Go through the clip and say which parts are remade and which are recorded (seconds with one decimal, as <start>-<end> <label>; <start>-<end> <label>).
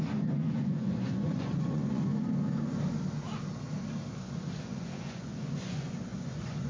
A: 0.0-2.1 remade; 2.1-4.2 recorded; 4.2-6.7 remade